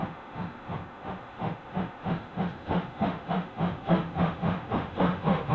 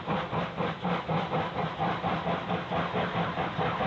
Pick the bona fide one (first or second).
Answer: second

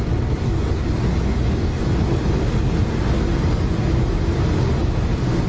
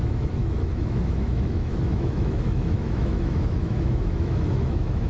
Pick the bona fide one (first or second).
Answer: first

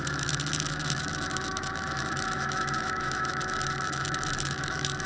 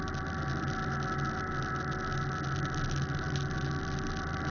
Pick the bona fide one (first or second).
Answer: second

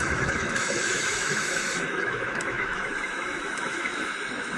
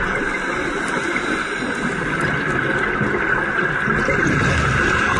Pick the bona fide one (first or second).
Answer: second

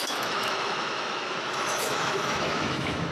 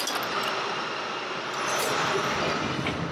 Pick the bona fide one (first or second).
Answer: second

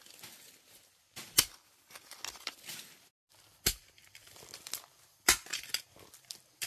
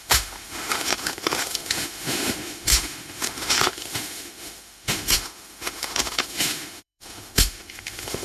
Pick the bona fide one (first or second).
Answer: first